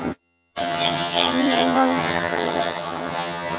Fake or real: fake